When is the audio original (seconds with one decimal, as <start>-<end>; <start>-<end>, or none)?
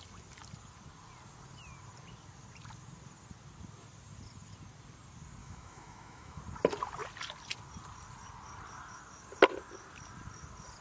0.0-5.4; 6.4-10.8